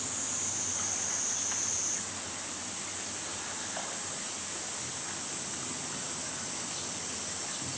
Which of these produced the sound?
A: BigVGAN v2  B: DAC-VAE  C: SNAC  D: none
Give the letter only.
D